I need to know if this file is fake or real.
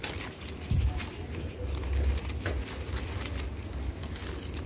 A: real